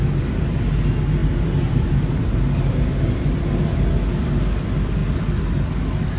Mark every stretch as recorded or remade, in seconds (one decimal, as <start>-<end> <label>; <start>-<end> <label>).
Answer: 0.0-1.2 recorded; 1.2-3.2 remade; 3.2-6.2 recorded